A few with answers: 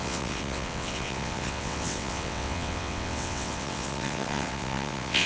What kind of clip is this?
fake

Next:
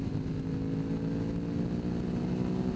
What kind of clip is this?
real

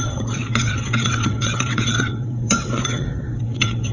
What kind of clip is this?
fake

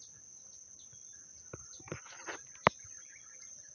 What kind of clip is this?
real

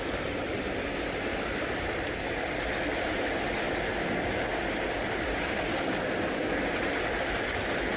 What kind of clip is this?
real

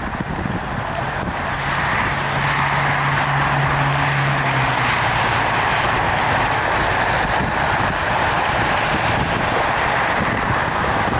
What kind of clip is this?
real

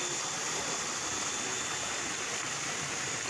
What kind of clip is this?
real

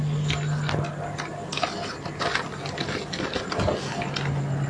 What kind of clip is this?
real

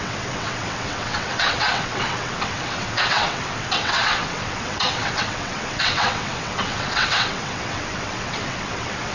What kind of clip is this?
fake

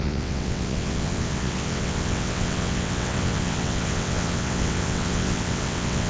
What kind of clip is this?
fake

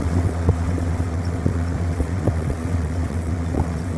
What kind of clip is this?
fake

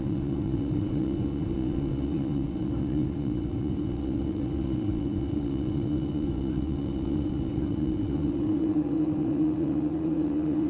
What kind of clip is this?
fake